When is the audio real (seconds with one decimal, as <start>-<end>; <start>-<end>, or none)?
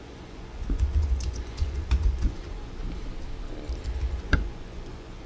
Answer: 2.8-4.1